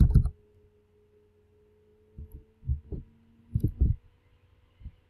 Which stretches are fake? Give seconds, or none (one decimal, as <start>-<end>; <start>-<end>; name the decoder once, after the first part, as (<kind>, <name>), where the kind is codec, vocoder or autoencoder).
none